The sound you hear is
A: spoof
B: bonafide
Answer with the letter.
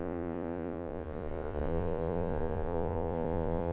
A